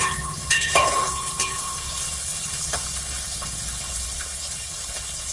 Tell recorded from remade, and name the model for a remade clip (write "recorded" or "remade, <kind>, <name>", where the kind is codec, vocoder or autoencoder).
remade, codec, HILCodec